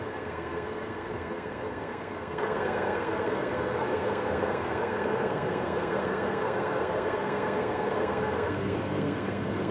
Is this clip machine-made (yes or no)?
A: yes